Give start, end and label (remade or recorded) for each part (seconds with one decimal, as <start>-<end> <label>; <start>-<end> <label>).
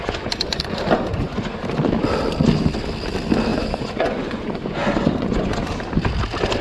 0.0-0.6 remade; 0.6-1.1 recorded; 1.1-1.6 remade; 1.6-3.5 recorded; 3.5-5.5 remade; 5.5-6.6 recorded